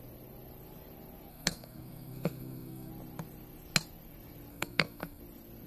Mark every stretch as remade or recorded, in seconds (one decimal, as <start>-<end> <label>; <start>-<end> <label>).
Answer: 0.0-1.3 recorded; 1.3-2.9 remade; 2.9-4.5 recorded; 4.5-5.2 remade; 5.2-5.7 recorded